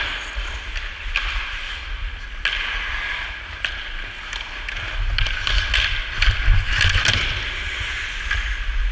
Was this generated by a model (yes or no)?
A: no